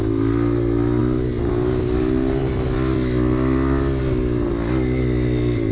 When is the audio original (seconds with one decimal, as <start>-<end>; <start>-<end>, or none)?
0.0-5.7

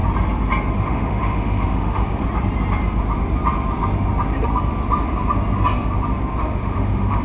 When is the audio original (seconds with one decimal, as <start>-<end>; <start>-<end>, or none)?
0.0-0.7; 2.2-6.4